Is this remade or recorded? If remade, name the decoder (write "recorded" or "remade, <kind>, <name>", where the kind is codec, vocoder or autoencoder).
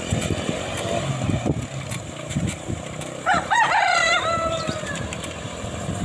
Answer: remade, vocoder, BigVGAN v2